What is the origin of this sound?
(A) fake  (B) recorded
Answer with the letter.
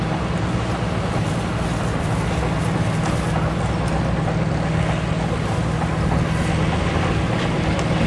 B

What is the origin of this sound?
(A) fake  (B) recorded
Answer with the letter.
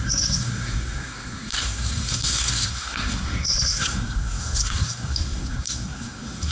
A